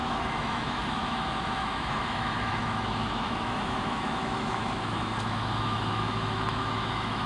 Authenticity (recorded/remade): remade